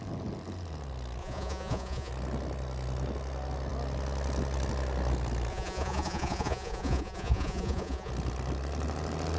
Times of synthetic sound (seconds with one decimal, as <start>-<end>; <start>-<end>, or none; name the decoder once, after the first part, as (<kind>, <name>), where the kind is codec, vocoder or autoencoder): 1.2-2.1 (vocoder, Vocos); 5.5-8.1